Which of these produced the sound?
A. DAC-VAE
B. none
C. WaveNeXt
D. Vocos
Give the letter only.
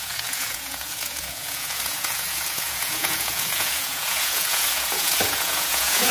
D